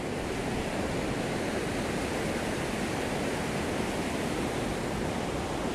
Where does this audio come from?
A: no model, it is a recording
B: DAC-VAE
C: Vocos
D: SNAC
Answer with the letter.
A